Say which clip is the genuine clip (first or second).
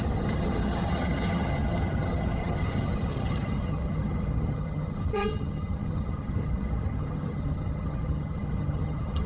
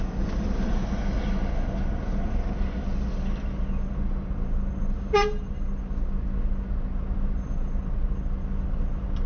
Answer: second